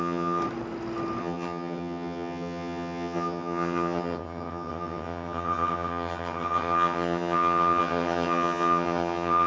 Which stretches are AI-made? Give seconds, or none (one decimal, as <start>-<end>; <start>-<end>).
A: 0.0-0.4; 1.2-9.5